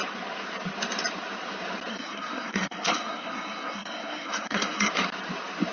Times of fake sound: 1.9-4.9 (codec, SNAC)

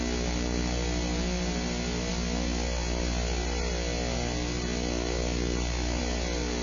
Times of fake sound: none

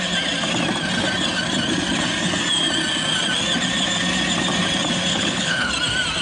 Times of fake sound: 5.1-5.7 (codec, HILCodec)

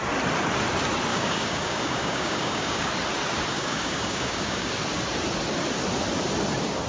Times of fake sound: 1.1-2.9 (codec, DAC); 3.5-4.7